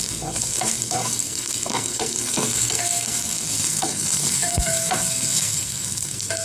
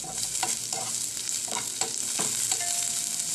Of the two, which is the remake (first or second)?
first